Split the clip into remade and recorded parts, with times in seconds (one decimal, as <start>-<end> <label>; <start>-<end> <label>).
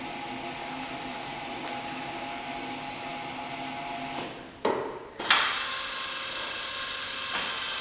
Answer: 0.0-1.1 recorded; 1.1-1.6 remade; 1.6-7.8 recorded